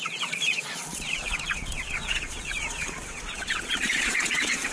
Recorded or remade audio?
remade